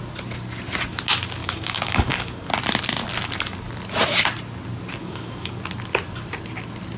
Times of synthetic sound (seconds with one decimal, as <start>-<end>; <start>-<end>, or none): 1.4-2.5; 5.0-5.6